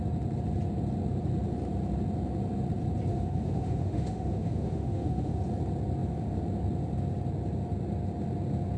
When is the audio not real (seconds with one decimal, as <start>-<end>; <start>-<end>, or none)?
3.1-5.4